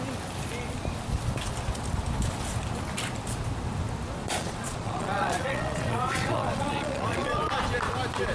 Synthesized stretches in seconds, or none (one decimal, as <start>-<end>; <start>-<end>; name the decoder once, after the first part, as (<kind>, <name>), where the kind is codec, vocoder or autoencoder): 4.2-7.5 (vocoder, Vocos)